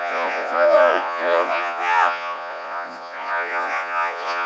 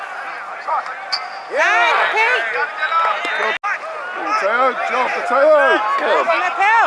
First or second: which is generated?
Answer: first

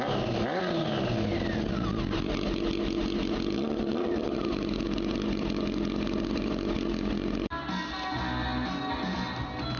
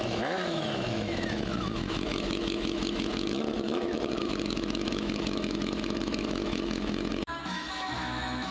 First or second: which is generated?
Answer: second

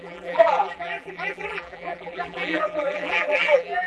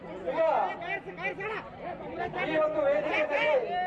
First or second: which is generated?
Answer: first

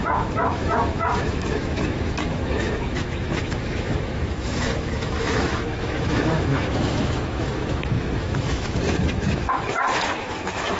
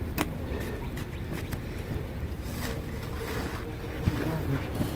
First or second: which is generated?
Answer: first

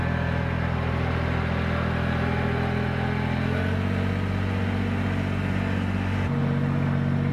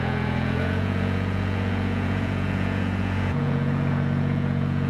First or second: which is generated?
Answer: second